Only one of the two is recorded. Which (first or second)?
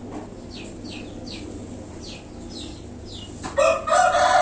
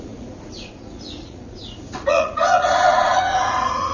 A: first